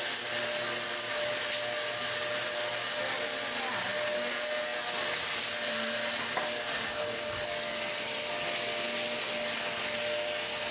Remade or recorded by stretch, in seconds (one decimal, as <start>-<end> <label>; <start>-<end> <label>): 0.0-10.7 recorded